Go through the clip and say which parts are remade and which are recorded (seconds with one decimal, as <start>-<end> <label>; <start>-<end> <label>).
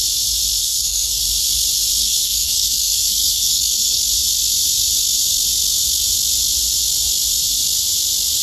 0.0-0.6 recorded; 0.6-1.2 remade; 1.2-2.0 recorded; 2.0-4.0 remade; 4.0-8.4 recorded